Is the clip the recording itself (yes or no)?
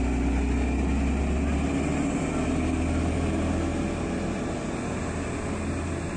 yes